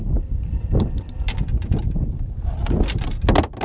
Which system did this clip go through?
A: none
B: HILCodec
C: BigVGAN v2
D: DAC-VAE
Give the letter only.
A